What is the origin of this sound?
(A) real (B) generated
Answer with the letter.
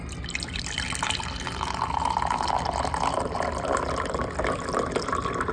A